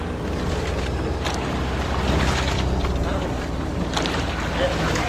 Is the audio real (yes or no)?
yes